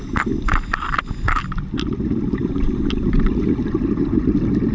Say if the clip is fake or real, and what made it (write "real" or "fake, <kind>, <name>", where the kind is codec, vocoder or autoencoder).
real